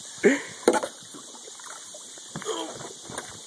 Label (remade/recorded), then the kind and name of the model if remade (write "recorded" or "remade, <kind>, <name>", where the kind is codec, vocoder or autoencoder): recorded